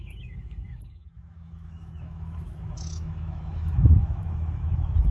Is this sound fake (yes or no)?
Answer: yes